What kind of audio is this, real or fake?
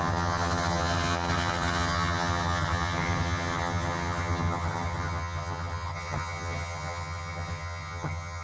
fake